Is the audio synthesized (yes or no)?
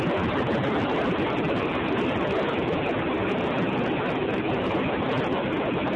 no